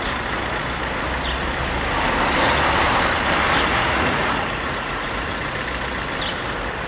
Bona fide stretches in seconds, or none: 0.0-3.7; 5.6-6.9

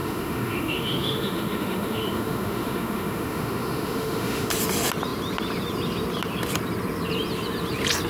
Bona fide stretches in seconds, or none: 4.5-8.1